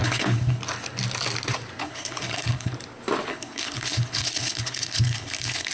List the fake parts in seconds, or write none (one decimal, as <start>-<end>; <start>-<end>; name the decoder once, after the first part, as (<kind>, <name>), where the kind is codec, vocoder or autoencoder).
0.0-0.6 (codec, HILCodec); 1.8-2.7; 3.3-5.7